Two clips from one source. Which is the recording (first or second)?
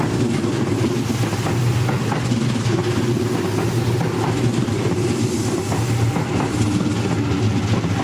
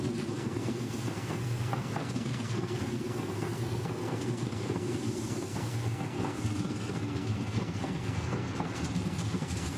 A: first